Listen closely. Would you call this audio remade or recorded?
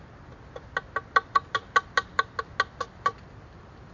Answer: recorded